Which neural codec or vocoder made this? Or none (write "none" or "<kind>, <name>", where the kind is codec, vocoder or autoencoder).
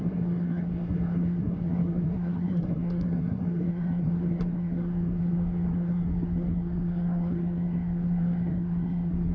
codec, SNAC